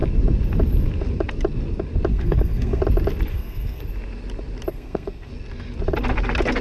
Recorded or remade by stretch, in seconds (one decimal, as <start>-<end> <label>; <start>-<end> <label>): 0.0-2.1 recorded; 2.1-2.8 remade; 2.8-3.3 recorded; 3.3-3.8 remade; 3.8-4.7 recorded; 4.7-5.3 remade; 5.3-6.6 recorded